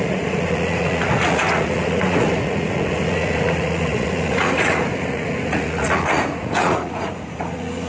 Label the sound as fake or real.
fake